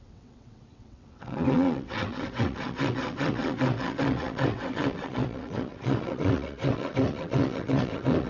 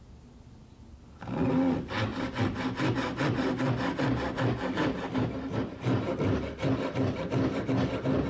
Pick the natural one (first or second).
second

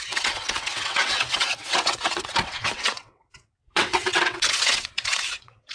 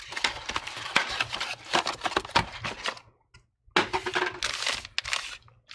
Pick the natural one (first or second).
second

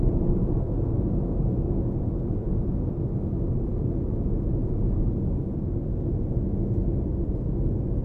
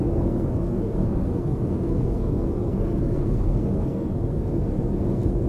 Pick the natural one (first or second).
first